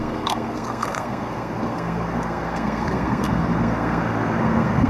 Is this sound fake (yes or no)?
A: yes